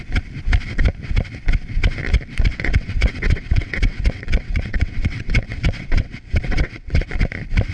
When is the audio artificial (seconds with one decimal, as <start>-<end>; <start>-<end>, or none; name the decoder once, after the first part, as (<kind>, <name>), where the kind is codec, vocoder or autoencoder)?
2.5-7.1 (vocoder, WaveNeXt)